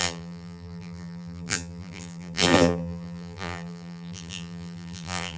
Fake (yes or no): yes